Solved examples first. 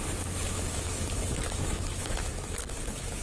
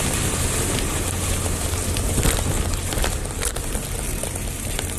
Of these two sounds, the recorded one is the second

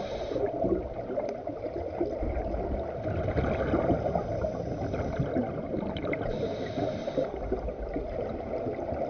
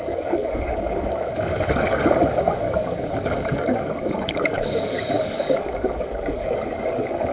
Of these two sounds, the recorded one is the first